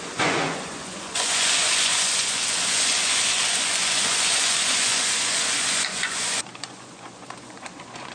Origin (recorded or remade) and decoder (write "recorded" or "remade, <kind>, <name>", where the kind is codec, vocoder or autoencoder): remade, vocoder, Vocos